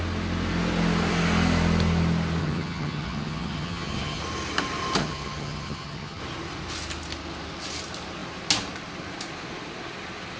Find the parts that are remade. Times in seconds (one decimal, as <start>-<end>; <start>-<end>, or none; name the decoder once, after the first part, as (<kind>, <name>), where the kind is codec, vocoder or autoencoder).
2.4-4.2 (vocoder, HiFi-GAN); 5.0-6.2